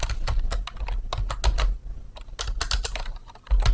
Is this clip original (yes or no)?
yes